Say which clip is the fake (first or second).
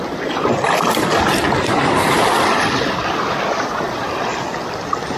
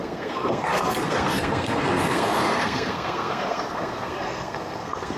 second